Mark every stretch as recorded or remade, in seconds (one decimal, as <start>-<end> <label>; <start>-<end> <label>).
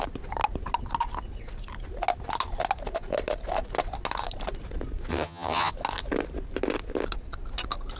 0.0-5.1 recorded; 5.1-5.7 remade; 5.7-8.0 recorded